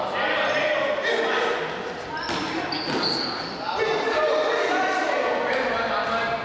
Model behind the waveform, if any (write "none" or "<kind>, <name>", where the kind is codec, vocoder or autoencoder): none